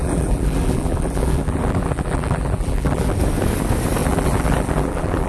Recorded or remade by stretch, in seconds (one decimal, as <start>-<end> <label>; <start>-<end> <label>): 0.0-3.2 remade; 3.2-4.0 recorded; 4.0-5.3 remade